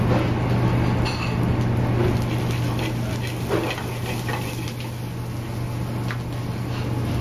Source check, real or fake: real